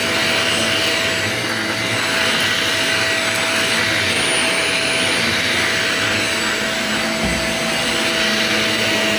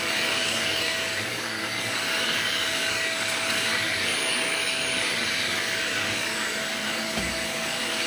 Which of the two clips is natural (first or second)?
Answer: first